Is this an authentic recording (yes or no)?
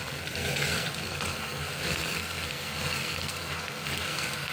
no